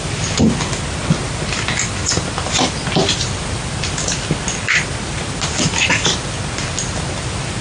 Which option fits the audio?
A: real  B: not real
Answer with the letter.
A